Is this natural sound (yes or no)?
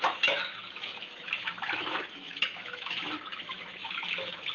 no